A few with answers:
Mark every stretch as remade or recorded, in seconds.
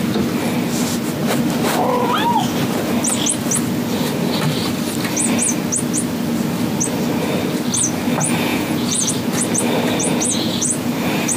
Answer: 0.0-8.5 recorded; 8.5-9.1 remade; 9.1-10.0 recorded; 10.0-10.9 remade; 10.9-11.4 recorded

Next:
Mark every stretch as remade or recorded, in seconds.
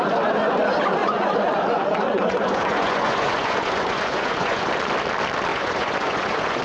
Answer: 0.0-1.0 recorded; 1.0-4.7 remade; 4.7-5.5 recorded; 5.5-6.6 remade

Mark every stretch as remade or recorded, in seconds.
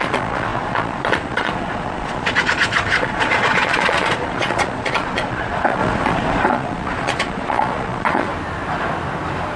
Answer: 0.0-8.3 remade; 8.3-9.6 recorded